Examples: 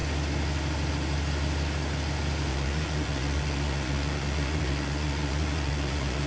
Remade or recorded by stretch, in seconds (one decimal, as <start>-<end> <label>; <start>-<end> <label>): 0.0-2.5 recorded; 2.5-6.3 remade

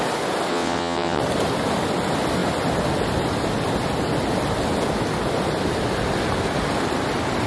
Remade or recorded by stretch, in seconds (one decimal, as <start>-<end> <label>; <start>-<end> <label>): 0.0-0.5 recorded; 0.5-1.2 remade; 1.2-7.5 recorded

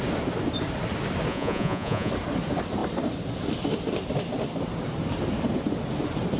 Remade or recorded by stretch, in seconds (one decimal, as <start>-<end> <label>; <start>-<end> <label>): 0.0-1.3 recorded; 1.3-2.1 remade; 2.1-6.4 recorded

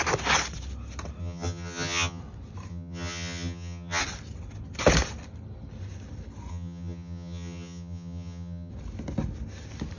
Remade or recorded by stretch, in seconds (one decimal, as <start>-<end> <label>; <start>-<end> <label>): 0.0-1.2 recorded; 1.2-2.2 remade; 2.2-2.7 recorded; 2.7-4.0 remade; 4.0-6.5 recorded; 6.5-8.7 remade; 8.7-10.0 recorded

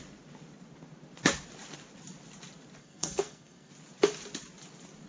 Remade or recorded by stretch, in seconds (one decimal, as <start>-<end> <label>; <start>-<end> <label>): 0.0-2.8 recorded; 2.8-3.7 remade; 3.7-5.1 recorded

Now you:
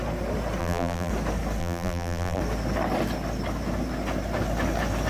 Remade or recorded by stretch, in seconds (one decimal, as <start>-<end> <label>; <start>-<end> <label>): 0.0-0.6 recorded; 0.6-1.1 remade; 1.1-1.6 recorded; 1.6-2.4 remade; 2.4-5.1 recorded

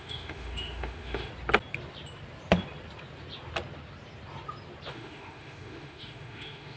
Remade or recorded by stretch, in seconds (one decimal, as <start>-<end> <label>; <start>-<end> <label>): 0.0-1.3 remade; 1.3-4.9 recorded; 4.9-6.8 remade

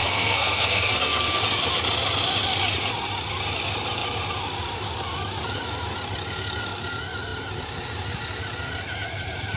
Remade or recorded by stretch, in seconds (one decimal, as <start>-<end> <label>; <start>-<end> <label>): 0.0-1.4 remade; 1.4-9.6 recorded